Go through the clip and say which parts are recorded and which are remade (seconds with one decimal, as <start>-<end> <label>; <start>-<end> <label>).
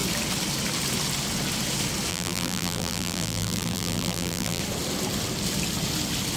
0.0-2.1 recorded; 2.1-4.6 remade; 4.6-6.4 recorded